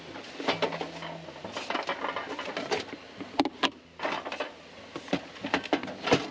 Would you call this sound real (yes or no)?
yes